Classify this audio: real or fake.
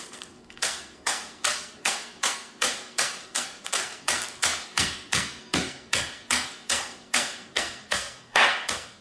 fake